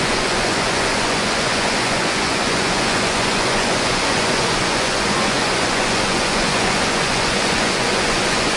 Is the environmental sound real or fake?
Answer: fake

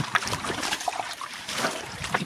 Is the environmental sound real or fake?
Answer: fake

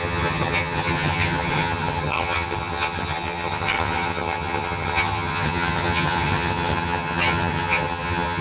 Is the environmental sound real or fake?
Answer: fake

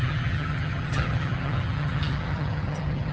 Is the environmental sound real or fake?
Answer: fake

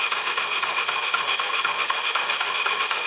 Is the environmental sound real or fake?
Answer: fake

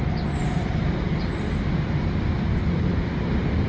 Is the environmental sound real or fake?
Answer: real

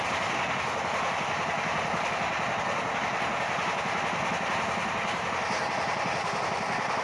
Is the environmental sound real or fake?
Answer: real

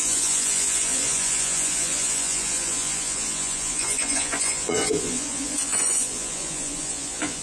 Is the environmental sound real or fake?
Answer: fake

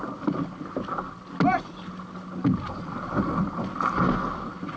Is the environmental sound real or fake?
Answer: real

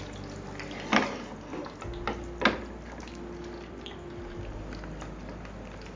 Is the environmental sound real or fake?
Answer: real